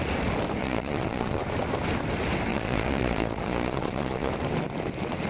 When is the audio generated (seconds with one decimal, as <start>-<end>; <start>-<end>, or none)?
0.6-1.4; 2.5-4.3